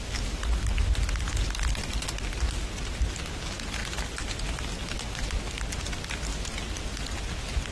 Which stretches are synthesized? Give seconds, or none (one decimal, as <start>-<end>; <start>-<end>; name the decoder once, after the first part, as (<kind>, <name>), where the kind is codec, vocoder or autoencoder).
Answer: none